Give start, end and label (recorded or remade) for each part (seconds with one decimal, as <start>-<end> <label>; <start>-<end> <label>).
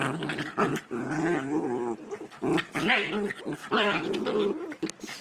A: 0.0-3.6 recorded; 3.6-4.2 remade; 4.2-5.2 recorded